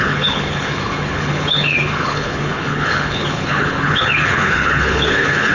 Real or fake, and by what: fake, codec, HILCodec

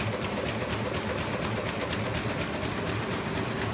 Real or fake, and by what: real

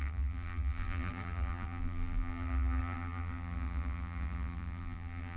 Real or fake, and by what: fake, vocoder, BigVGAN v2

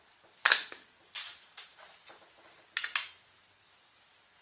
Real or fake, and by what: real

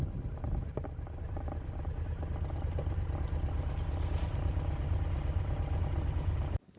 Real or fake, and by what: real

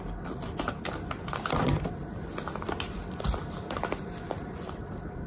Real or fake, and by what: fake, vocoder, BigVGAN v2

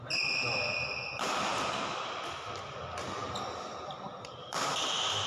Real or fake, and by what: fake, vocoder, BigVGAN v2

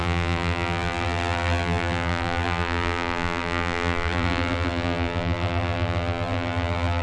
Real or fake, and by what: fake, vocoder, BigVGAN v2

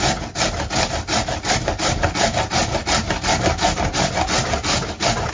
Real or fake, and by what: real